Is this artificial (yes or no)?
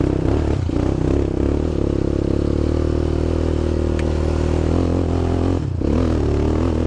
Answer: no